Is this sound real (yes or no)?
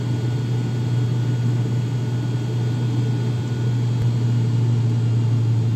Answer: yes